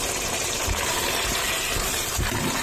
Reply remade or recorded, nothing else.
remade